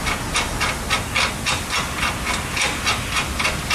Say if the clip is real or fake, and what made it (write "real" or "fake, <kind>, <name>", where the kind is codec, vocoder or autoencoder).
real